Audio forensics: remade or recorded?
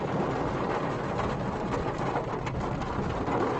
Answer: recorded